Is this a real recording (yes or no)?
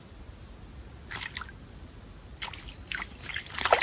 yes